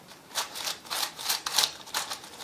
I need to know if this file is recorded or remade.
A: remade